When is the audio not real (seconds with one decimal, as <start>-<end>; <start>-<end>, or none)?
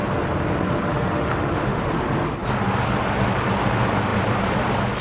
0.9-1.8